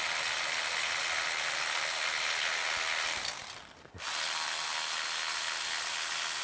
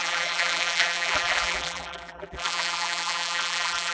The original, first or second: first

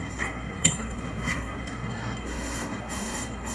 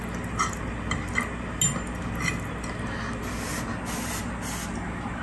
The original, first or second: second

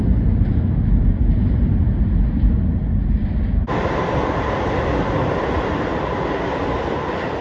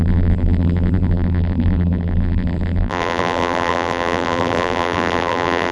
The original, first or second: first